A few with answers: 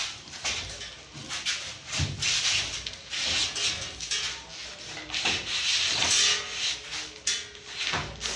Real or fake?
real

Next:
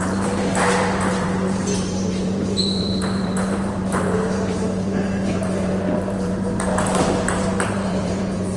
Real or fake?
fake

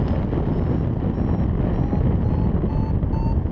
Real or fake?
real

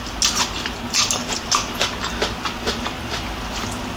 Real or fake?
real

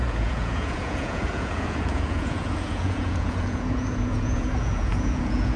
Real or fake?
fake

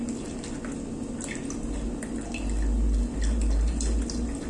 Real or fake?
real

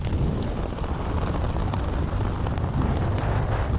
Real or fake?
real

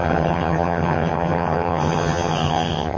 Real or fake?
fake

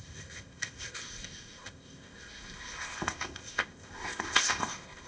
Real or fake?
fake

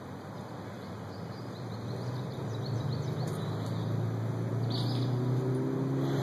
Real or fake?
real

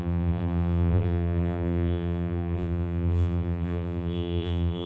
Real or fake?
fake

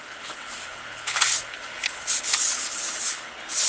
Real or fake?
fake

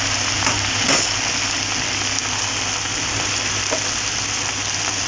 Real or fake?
real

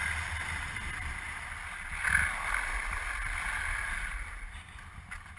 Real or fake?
real